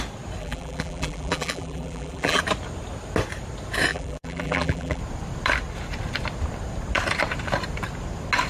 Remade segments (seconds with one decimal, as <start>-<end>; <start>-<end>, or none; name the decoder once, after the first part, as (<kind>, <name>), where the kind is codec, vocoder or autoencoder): 0.4-2.4 (vocoder, BigVGAN v2); 3.9-5.0